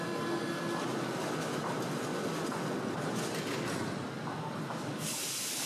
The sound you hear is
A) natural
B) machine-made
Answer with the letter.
A